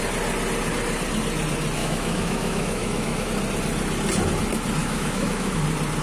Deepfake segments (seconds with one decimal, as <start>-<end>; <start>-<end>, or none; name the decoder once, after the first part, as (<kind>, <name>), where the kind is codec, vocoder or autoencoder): 1.8-3.3 (autoencoder, DAC-VAE); 4.8-5.6